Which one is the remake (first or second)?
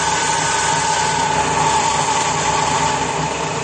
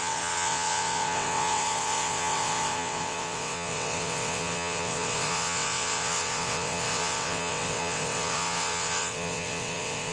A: second